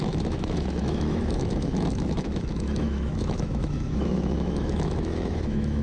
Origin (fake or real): fake